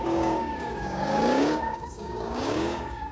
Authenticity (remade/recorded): remade